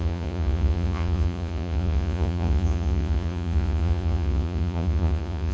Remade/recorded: remade